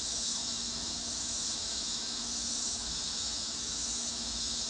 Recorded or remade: remade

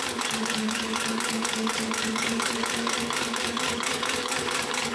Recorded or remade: remade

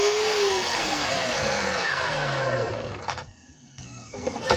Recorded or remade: remade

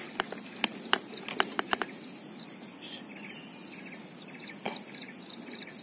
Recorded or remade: recorded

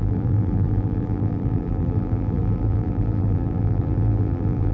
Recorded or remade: remade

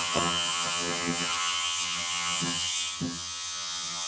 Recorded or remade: remade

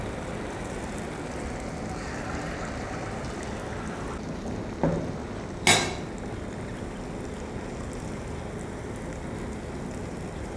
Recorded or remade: recorded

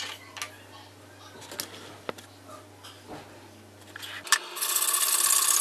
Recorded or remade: recorded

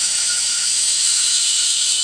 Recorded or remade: remade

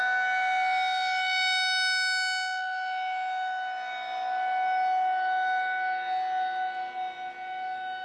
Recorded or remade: recorded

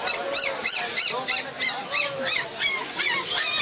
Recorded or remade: recorded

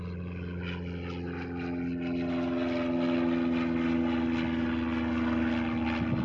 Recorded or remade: recorded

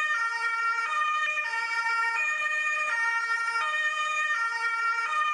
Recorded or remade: remade